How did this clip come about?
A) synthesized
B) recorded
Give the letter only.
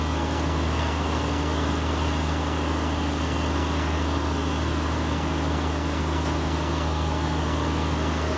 A